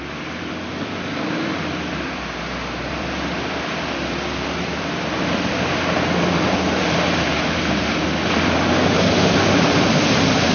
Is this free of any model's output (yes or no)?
no